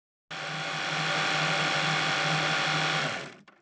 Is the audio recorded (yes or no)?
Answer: yes